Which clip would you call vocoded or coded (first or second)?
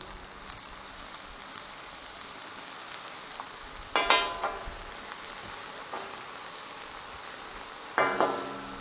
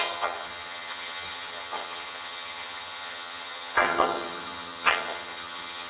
second